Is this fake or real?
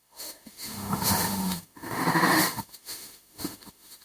fake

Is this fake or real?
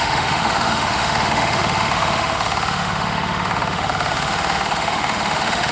fake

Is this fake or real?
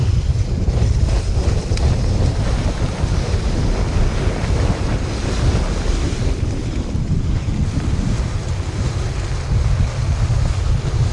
real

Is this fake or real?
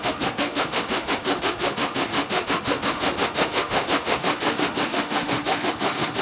fake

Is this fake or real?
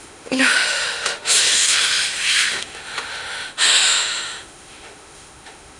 fake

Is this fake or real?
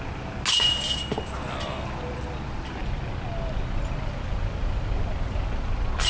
real